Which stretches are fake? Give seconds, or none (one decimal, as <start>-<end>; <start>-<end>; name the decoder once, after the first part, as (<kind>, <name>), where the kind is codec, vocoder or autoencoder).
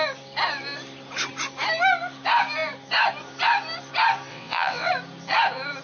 4.3-4.9 (vocoder, WaveNeXt)